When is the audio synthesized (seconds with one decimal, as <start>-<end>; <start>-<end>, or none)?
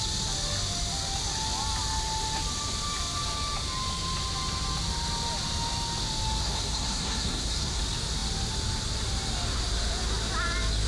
6.4-7.8